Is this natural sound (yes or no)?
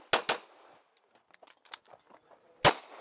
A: yes